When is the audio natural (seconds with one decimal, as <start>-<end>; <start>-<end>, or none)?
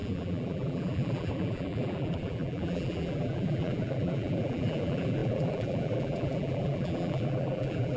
none